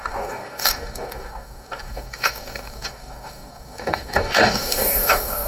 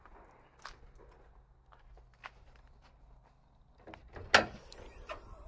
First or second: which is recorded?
second